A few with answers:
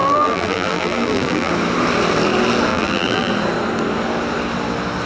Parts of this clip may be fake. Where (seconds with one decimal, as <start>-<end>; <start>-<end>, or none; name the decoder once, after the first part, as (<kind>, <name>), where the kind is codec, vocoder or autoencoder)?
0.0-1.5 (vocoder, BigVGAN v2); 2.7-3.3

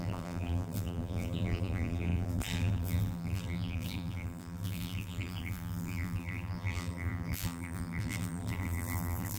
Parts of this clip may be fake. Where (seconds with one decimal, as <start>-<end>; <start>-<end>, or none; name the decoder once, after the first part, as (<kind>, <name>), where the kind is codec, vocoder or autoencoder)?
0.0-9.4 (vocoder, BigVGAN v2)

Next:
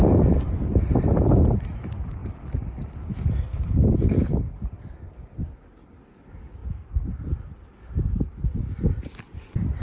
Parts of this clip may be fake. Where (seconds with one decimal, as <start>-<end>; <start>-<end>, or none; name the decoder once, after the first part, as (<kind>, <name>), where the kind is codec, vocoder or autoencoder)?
none